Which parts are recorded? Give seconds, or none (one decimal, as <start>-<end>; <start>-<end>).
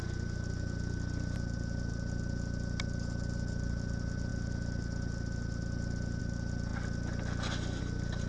0.0-8.3